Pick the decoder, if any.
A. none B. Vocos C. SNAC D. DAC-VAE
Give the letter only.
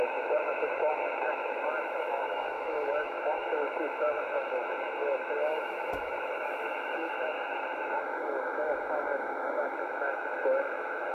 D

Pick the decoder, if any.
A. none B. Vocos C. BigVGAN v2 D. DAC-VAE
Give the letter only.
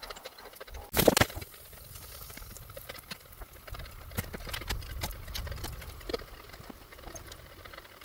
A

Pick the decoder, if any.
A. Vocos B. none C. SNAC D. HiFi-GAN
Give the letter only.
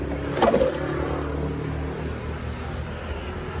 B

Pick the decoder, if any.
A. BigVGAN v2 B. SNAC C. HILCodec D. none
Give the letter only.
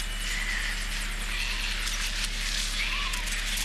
D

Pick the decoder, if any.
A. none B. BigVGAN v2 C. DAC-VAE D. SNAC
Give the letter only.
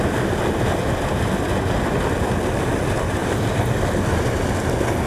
A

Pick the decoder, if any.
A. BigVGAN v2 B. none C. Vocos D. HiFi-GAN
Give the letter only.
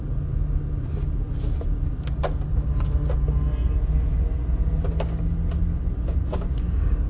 B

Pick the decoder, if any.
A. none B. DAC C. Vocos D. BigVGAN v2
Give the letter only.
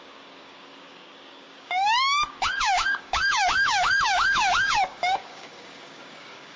B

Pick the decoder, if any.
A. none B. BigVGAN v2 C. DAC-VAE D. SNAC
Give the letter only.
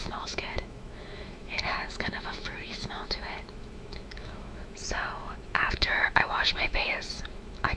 C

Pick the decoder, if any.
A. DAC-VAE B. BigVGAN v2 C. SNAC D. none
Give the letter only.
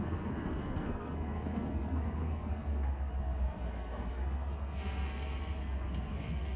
C